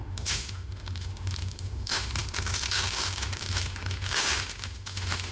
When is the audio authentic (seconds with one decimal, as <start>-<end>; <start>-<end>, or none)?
none